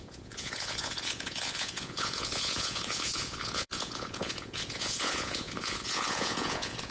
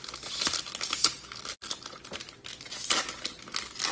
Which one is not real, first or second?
first